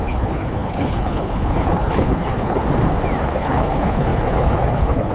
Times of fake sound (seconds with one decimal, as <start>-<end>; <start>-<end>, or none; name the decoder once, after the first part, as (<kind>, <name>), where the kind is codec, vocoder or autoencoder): 0.0-2.6 (codec, HILCodec); 3.2-5.1